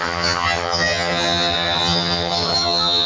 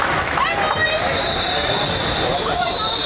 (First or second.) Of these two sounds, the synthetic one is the first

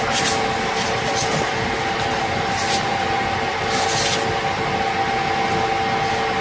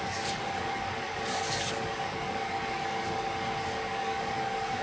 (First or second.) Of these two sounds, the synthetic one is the second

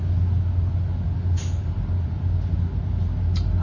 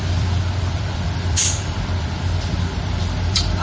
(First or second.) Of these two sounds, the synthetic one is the second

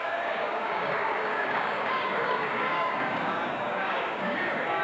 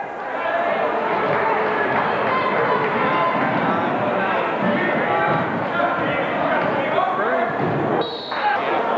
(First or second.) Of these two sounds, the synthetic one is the first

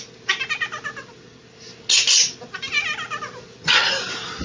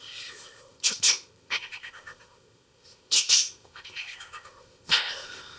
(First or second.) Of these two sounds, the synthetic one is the second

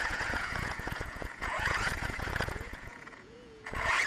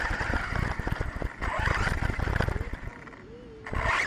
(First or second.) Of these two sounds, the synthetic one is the first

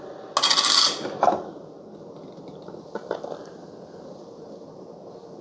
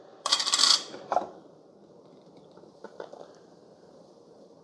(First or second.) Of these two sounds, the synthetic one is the second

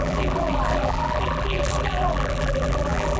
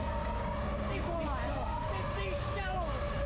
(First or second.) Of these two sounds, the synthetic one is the first